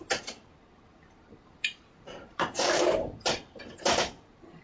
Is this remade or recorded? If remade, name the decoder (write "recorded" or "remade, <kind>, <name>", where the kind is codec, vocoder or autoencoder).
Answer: remade, vocoder, BigVGAN v2